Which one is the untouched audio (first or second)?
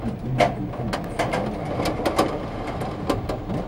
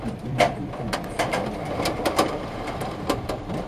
first